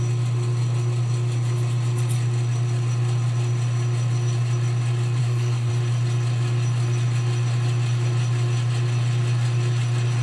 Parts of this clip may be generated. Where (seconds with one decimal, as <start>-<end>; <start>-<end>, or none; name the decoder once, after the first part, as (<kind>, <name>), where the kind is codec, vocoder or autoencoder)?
5.2-5.7 (codec, SNAC)